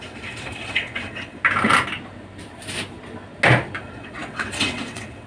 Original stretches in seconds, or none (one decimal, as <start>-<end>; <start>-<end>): 1.4-3.8